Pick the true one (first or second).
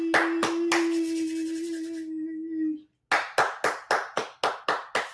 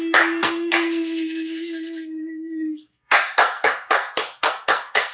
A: first